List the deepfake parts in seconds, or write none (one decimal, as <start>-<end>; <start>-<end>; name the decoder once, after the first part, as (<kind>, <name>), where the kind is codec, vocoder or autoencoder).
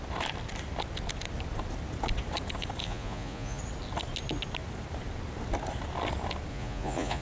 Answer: 2.8-3.6 (vocoder, Vocos); 6.5-7.2